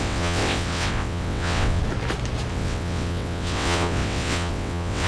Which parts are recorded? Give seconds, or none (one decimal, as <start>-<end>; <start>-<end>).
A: 1.8-2.5